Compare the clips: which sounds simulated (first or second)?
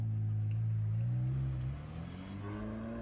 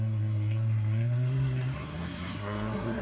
second